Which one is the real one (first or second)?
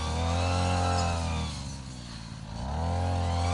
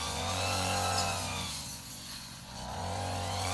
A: first